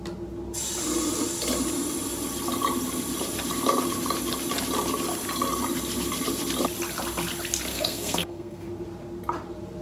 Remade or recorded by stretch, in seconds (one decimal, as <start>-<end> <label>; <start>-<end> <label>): 0.0-7.7 recorded; 7.7-8.7 remade; 8.7-9.8 recorded